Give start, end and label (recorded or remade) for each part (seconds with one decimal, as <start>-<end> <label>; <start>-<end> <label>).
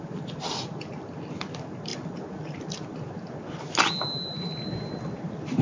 0.0-4.3 recorded; 4.3-5.0 remade; 5.0-5.6 recorded